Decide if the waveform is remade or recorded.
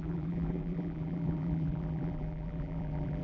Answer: remade